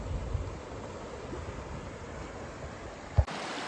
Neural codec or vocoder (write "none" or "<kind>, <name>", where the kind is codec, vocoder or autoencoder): none